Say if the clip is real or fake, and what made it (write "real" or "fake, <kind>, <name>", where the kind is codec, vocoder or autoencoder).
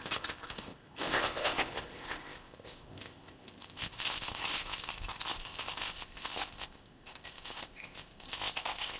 fake, codec, ZipCodec